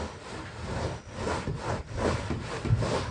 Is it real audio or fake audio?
real